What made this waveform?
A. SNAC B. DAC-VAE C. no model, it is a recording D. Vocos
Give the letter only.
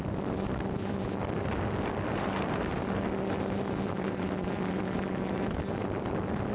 C